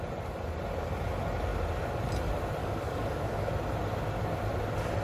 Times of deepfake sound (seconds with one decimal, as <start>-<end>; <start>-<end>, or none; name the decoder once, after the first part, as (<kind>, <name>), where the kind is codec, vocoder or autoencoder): 2.6-3.5 (codec, DAC)